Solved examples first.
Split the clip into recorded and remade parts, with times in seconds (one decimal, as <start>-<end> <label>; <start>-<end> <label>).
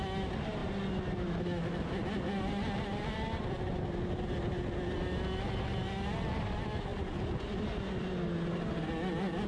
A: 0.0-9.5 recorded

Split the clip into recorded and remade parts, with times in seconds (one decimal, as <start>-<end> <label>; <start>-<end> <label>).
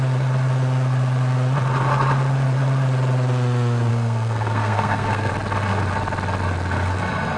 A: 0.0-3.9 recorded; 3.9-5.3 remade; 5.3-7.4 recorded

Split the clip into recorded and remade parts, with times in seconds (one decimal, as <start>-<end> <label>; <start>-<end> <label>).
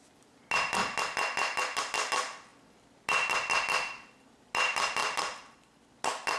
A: 0.0-6.4 recorded